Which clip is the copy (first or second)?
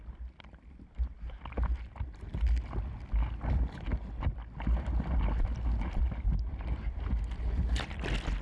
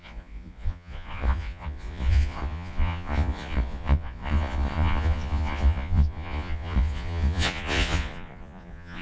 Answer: second